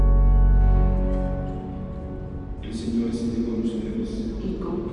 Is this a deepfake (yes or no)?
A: no